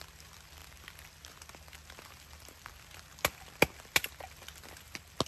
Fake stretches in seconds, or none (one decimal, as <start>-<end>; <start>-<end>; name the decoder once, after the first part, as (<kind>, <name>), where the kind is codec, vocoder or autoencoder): none